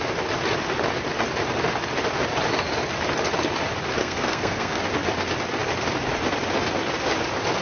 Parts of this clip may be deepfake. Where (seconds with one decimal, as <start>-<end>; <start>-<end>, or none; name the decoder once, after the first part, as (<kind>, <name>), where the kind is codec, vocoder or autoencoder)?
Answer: 4.0-4.8 (codec, SNAC)